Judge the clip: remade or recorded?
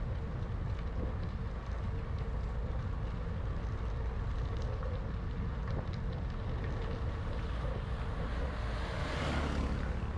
recorded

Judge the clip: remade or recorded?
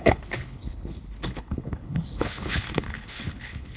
remade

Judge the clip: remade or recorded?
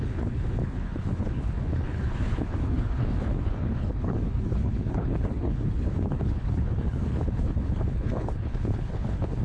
remade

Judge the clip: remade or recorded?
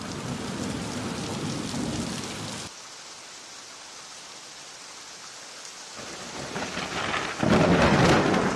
recorded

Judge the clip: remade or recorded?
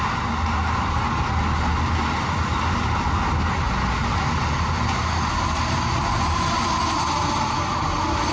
recorded